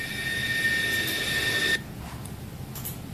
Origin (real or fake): real